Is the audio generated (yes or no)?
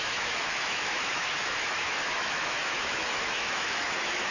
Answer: yes